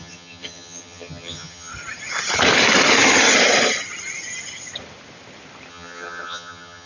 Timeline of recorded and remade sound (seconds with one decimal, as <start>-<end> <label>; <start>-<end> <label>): 0.0-1.7 remade; 1.7-5.7 recorded; 5.7-6.9 remade